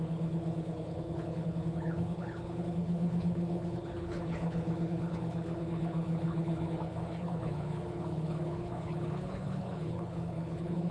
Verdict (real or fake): fake